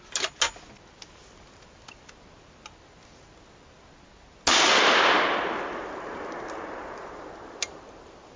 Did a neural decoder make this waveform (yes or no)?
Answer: no